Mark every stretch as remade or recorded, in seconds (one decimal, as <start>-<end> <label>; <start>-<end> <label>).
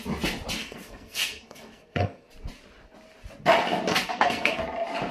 0.0-0.6 recorded; 0.6-2.3 remade; 2.3-3.9 recorded; 3.9-4.6 remade; 4.6-5.1 recorded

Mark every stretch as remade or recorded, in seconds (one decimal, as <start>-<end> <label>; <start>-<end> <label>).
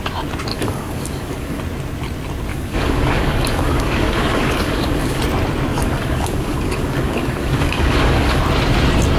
0.0-0.5 recorded; 0.5-1.6 remade; 1.6-2.5 recorded; 2.5-5.2 remade; 5.2-5.7 recorded; 5.7-8.4 remade; 8.4-9.2 recorded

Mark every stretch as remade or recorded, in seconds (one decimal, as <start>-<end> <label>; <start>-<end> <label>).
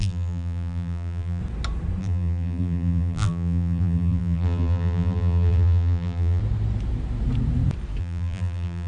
0.0-1.4 remade; 1.4-2.0 recorded; 2.0-6.4 remade; 6.4-8.0 recorded; 8.0-8.9 remade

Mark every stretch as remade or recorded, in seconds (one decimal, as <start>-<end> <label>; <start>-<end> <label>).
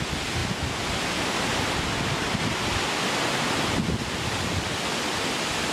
0.0-5.7 recorded